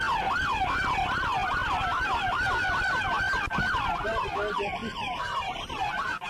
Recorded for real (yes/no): yes